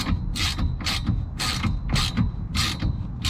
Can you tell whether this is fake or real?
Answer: real